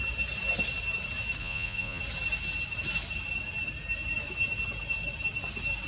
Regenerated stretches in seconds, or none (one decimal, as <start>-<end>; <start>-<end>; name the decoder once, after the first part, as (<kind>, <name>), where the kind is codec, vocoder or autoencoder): 1.4-2.0 (vocoder, Vocos)